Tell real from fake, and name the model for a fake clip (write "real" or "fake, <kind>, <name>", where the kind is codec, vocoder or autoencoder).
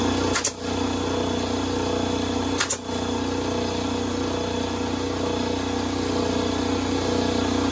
real